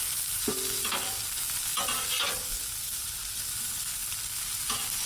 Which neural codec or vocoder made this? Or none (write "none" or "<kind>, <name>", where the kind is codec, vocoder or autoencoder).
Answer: none